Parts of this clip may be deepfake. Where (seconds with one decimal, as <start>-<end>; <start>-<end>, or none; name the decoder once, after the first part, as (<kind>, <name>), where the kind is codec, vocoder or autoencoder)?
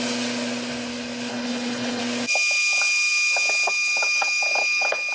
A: 1.3-2.0 (codec, HILCodec)